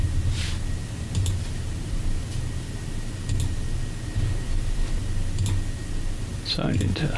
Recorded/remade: recorded